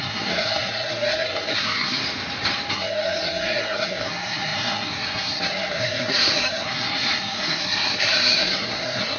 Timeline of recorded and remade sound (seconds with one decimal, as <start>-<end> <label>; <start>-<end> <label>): 0.0-2.0 remade; 2.0-2.7 recorded; 2.7-9.2 remade